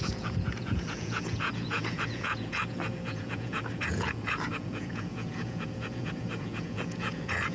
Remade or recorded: remade